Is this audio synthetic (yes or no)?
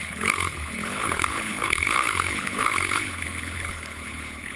yes